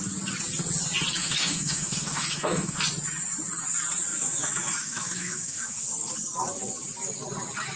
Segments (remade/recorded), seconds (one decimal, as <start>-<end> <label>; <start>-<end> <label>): 0.0-1.2 recorded; 1.2-2.8 remade; 2.8-4.1 recorded; 4.1-5.9 remade; 5.9-7.8 recorded